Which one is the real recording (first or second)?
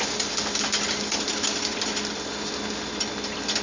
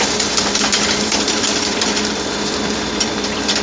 first